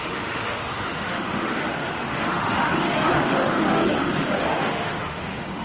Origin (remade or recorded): remade